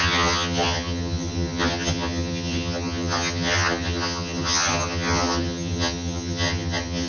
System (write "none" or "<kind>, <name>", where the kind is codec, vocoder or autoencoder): vocoder, HiFi-GAN